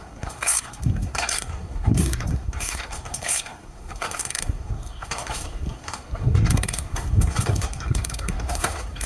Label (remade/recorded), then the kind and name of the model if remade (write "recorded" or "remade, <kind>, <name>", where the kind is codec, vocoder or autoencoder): remade, codec, SNAC